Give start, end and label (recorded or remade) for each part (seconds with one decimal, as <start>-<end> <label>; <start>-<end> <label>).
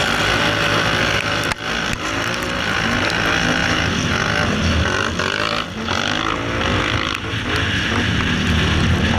0.0-9.2 recorded